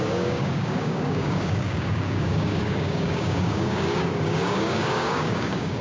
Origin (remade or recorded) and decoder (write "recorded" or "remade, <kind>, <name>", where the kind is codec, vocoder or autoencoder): remade, codec, DAC